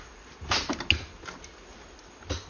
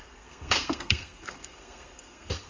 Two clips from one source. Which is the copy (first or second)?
second